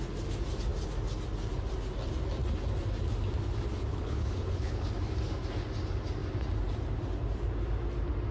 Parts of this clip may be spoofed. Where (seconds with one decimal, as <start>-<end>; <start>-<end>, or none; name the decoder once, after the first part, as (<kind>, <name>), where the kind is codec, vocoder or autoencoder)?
3.9-4.9 (codec, HILCodec)